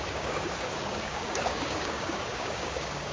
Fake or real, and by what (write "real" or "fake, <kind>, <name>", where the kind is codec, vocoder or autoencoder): fake, codec, DAC